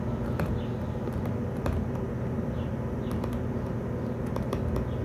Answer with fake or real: real